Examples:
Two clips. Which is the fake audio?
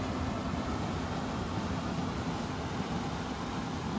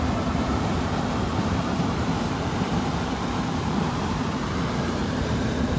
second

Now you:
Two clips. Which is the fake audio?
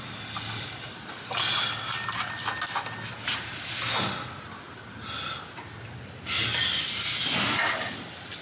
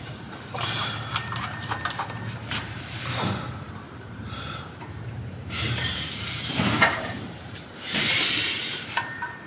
second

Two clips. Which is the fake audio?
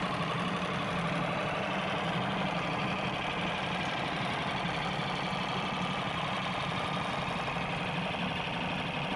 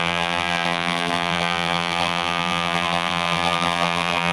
second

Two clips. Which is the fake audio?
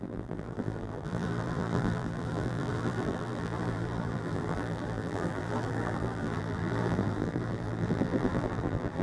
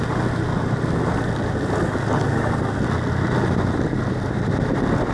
first